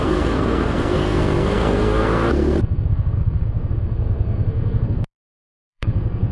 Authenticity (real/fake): fake